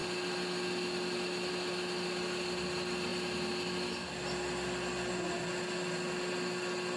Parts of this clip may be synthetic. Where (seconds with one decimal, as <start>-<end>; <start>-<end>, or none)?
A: none